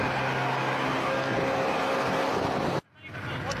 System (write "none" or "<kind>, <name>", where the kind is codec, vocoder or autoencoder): none